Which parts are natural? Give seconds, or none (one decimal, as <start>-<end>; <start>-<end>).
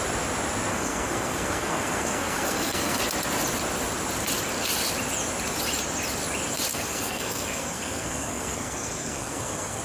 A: 0.0-0.7; 3.0-6.7